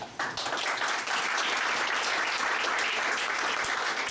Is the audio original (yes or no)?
yes